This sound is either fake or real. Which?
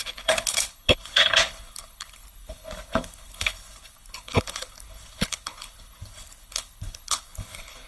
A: fake